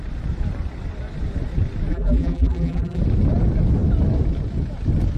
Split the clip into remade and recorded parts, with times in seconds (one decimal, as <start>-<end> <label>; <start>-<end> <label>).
0.0-1.9 recorded; 1.9-3.0 remade; 3.0-5.2 recorded

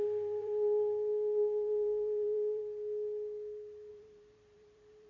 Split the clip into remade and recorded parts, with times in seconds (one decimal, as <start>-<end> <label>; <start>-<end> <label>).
0.0-2.6 remade; 2.6-3.9 recorded; 3.9-5.1 remade